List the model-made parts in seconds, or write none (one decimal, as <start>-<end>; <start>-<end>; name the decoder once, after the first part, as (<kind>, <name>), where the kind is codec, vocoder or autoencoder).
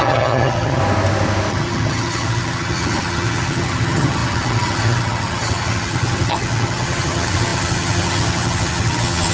0.0-0.8 (vocoder, HiFi-GAN); 1.5-9.3